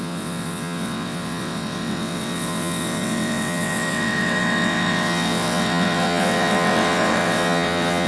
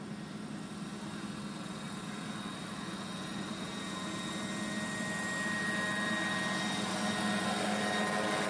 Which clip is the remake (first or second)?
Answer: first